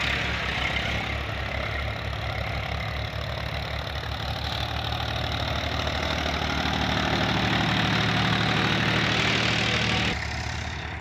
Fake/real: real